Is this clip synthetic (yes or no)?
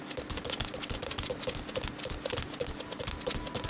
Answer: no